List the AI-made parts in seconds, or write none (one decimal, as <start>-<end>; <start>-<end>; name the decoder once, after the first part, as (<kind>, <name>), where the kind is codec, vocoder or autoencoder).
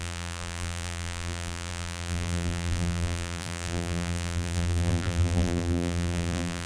0.0-6.7 (vocoder, BigVGAN v2)